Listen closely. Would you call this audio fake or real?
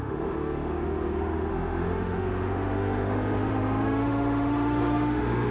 fake